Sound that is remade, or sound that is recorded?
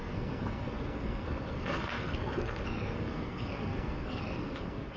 remade